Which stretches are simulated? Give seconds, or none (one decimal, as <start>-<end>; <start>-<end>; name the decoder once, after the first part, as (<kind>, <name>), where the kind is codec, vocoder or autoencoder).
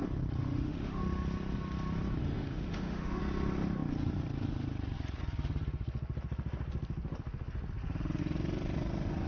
0.4-1.0 (autoencoder, DAC-VAE); 2.2-3.2